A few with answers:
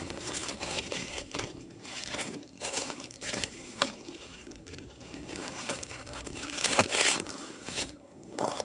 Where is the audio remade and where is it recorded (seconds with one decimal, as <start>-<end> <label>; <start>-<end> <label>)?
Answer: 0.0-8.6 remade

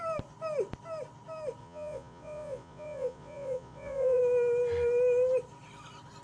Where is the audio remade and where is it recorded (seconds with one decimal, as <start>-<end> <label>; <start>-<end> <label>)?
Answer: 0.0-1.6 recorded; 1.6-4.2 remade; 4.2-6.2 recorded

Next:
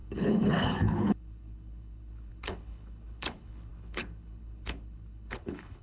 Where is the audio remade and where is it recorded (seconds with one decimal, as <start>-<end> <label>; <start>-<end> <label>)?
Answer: 0.0-5.8 remade

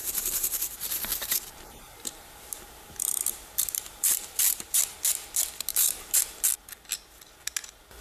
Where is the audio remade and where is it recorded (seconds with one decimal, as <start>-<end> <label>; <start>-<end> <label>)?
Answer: 0.0-4.8 remade; 4.8-5.7 recorded; 5.7-6.2 remade; 6.2-8.0 recorded

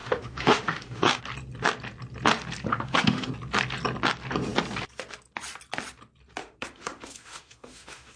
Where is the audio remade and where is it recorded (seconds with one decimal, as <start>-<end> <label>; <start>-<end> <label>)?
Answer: 0.0-1.2 remade; 1.2-2.7 recorded; 2.7-3.3 remade; 3.3-6.4 recorded; 6.4-8.2 remade

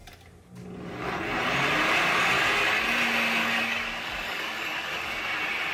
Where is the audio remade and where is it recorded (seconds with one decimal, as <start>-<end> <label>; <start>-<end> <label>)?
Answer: 0.0-3.4 recorded; 3.4-5.2 remade; 5.2-5.7 recorded

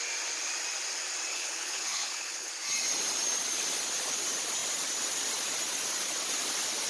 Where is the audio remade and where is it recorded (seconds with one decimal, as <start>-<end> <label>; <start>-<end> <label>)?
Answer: 0.0-1.3 recorded; 1.3-2.5 remade; 2.5-6.9 recorded